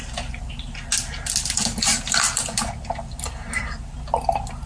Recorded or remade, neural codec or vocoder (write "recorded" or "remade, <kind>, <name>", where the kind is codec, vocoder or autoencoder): recorded